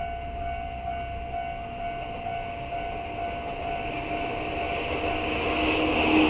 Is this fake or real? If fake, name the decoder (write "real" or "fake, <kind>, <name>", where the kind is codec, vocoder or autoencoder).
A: real